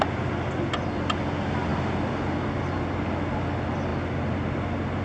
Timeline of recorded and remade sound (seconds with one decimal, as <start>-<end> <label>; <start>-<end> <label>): 0.0-5.0 recorded